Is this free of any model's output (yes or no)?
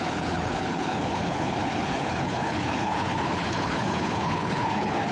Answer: no